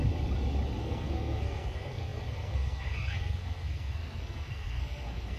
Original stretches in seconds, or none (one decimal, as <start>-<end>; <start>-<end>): 0.0-0.8